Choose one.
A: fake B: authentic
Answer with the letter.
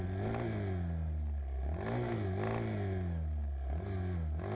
B